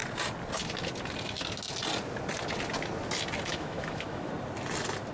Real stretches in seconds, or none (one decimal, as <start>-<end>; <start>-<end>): 0.0-3.5; 4.3-5.1